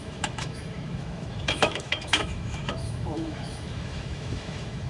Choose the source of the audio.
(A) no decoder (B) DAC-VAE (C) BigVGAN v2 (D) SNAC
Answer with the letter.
B